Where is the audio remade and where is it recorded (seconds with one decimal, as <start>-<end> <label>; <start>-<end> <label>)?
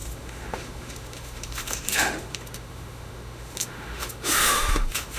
0.0-5.2 remade